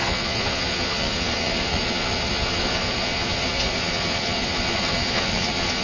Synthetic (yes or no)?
yes